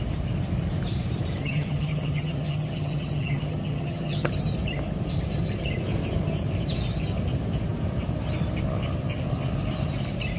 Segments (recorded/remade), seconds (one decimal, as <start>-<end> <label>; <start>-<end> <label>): 0.0-1.4 recorded; 1.4-4.3 remade; 4.3-10.4 recorded